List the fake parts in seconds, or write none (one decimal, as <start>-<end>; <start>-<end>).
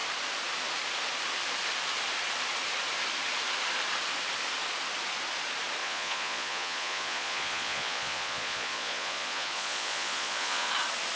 5.8-10.7